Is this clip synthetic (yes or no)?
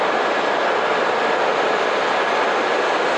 no